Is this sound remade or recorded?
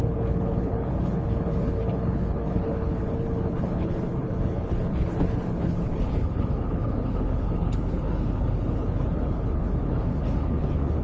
remade